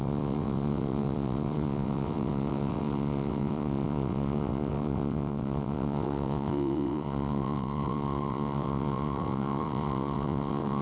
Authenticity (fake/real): fake